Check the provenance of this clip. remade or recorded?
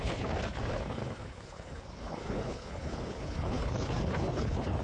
remade